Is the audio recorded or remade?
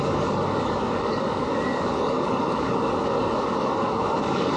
remade